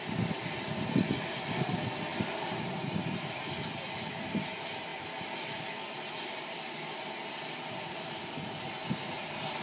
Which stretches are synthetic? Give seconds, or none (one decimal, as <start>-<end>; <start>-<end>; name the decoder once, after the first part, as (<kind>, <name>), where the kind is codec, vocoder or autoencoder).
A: none